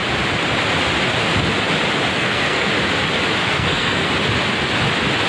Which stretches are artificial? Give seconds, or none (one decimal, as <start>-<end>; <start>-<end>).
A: 2.1-2.7; 3.4-4.1